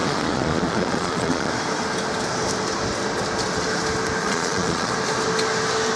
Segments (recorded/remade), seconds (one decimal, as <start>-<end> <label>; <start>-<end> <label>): 0.0-1.5 remade; 1.5-4.2 recorded; 4.2-4.9 remade; 4.9-6.0 recorded